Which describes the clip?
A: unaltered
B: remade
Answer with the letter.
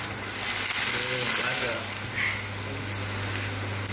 A